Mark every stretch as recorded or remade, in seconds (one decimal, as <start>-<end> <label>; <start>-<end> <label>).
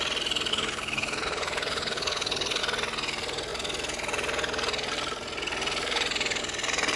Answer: 0.0-0.5 recorded; 0.5-2.6 remade; 2.6-7.0 recorded